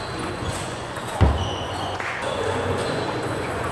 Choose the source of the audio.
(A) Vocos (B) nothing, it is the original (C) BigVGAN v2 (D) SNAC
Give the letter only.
A